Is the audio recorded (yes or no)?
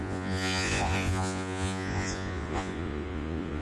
no